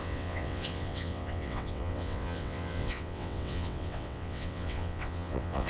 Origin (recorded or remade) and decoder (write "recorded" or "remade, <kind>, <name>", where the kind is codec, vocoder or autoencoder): remade, vocoder, WaveNeXt